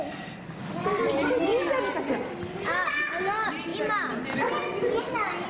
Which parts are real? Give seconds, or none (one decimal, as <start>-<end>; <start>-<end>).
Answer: 0.0-5.5